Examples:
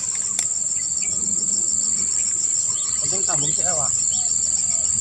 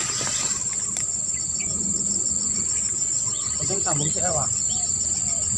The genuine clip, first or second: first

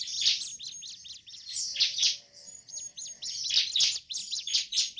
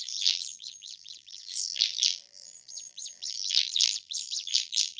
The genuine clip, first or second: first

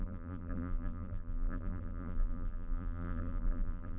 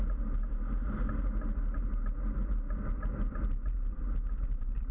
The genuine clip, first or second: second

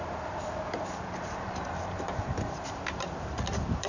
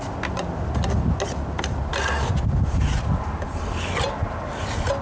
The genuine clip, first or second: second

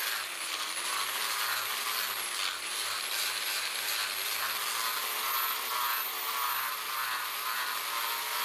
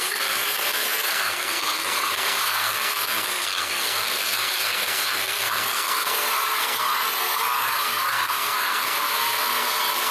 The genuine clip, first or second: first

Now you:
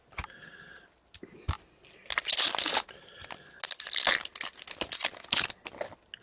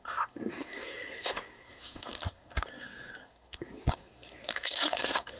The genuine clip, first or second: first